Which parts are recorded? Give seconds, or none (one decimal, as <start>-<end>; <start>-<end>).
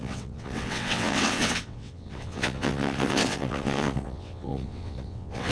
none